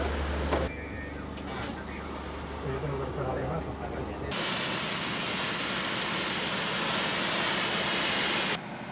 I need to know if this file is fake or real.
real